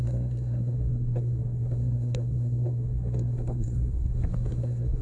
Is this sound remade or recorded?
remade